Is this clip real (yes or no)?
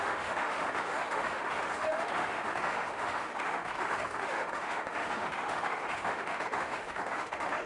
no